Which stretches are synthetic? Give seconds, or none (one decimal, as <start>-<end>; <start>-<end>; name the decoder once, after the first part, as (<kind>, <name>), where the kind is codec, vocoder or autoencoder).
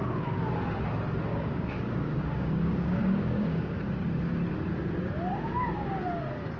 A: 1.3-3.8 (codec, DAC); 5.3-6.0